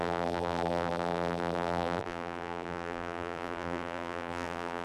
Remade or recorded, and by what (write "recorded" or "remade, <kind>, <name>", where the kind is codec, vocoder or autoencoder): remade, vocoder, BigVGAN v2